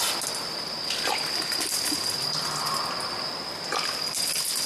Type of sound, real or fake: real